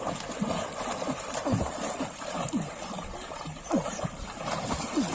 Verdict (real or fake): real